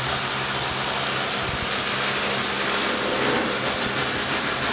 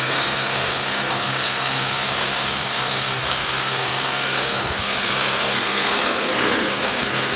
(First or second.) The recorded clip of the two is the first